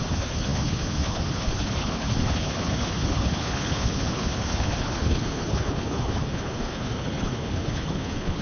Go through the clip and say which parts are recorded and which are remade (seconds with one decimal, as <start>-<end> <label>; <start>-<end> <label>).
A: 0.0-8.4 remade